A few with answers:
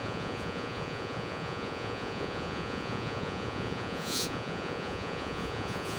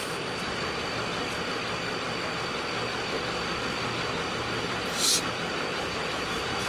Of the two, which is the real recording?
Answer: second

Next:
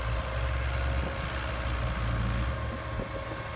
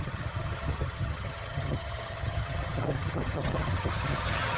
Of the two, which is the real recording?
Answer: first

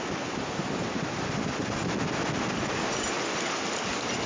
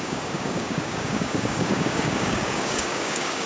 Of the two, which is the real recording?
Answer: first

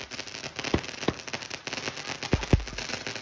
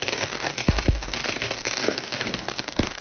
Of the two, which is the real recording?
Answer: first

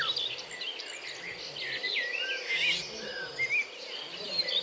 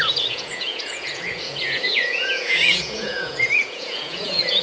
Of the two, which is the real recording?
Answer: first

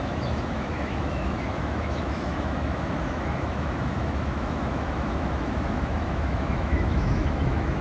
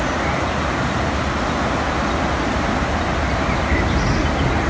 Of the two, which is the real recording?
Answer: second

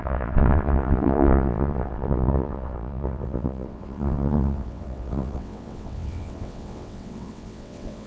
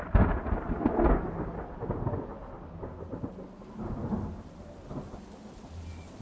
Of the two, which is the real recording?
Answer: second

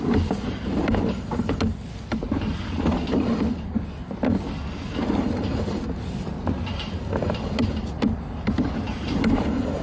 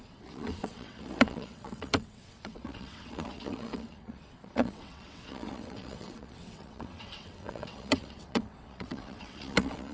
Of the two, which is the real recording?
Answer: first